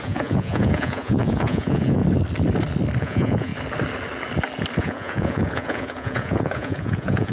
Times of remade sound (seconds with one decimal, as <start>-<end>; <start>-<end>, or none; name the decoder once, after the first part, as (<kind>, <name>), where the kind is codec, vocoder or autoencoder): 0.0-2.0 (vocoder, Vocos); 3.0-3.5; 4.8-7.3

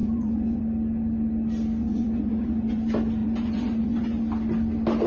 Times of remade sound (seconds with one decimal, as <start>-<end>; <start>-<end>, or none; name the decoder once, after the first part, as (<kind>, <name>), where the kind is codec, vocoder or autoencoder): 0.0-0.6 (vocoder, Vocos); 1.8-2.8; 3.2-4.2

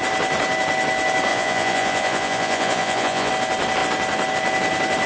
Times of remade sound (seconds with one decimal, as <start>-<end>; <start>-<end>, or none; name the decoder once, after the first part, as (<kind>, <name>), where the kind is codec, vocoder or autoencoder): 1.3-3.3 (vocoder, Vocos)

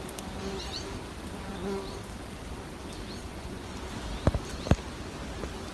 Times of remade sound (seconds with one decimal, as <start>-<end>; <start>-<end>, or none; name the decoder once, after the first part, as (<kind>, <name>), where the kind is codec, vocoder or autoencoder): 3.2-3.7 (vocoder, Vocos)

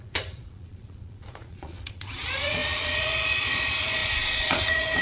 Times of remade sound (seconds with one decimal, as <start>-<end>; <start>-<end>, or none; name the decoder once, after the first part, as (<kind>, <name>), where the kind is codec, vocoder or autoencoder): 0.0-5.0 (vocoder, Vocos)

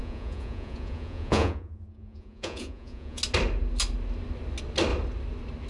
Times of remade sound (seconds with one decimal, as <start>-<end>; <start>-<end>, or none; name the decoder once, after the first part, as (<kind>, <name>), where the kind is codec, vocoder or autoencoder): 0.0-3.2 (vocoder, Vocos)

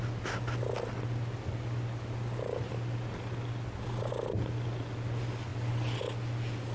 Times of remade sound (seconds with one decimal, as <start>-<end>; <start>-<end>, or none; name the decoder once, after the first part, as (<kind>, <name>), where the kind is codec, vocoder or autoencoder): none